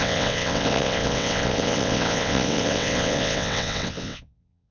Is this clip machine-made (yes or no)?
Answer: yes